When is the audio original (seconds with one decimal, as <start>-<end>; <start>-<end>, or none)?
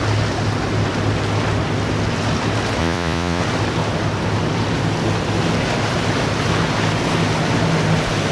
0.0-2.8; 3.4-8.3